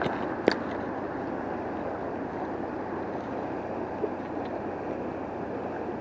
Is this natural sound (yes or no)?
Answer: yes